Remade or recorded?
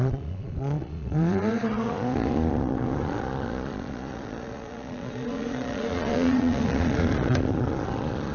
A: remade